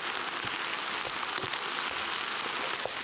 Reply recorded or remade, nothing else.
recorded